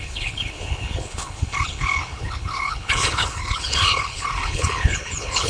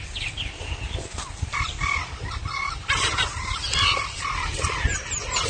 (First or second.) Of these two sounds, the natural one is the second